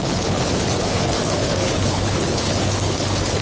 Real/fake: fake